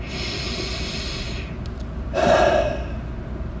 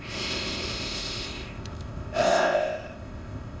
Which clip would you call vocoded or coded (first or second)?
second